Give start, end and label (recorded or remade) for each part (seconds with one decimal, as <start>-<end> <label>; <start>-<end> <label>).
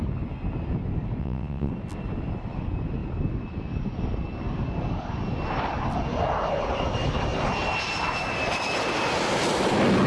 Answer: 0.0-1.2 recorded; 1.2-1.7 remade; 1.7-10.1 recorded